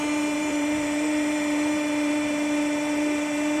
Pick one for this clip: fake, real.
fake